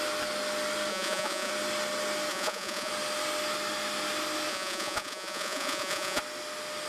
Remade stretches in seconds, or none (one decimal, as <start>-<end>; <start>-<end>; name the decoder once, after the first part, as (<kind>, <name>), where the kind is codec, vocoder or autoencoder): 0.9-1.5 (vocoder, Vocos); 2.3-2.9; 4.5-6.2